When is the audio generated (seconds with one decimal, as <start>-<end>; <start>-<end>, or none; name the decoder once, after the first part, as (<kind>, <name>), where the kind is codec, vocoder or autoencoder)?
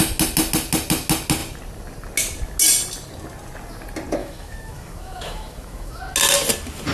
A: 4.2-6.0 (autoencoder, DAC-VAE)